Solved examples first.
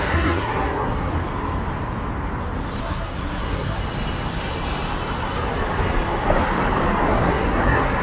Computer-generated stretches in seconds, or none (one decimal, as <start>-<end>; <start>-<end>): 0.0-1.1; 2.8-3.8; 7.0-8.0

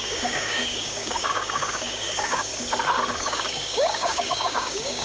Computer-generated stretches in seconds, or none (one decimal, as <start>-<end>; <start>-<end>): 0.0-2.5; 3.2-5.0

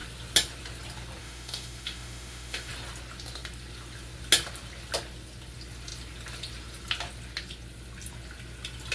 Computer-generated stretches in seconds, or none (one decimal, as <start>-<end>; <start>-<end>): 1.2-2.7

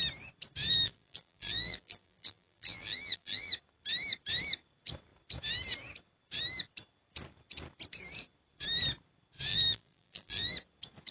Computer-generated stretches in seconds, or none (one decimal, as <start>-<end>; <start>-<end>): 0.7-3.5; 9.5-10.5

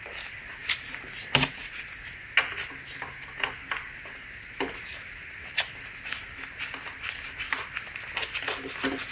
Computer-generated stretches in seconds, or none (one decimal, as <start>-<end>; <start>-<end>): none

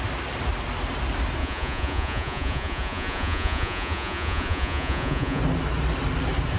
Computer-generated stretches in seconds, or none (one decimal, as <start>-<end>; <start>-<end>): 1.4-5.4

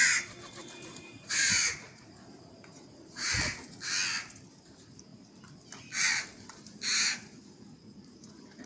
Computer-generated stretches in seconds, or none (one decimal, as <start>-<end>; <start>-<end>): 0.6-3.4; 6.9-8.7